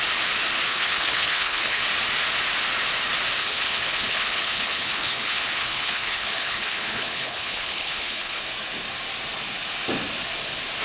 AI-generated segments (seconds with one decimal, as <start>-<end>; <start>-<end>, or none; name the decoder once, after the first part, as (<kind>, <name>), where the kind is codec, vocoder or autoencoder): 0.7-1.8 (codec, HILCodec); 3.4-8.4